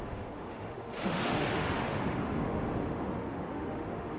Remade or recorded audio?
remade